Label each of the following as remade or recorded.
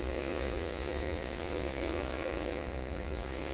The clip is remade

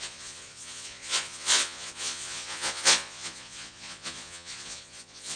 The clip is remade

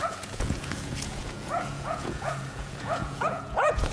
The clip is remade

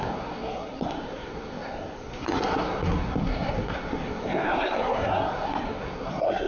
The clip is remade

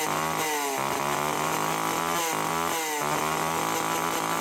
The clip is recorded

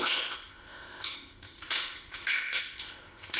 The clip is remade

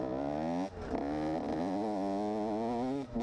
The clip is recorded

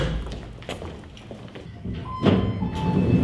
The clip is recorded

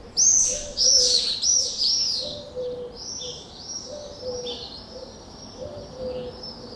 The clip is recorded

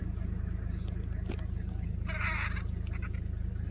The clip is recorded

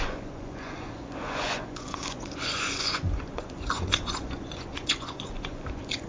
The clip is remade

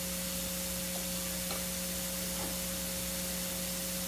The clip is recorded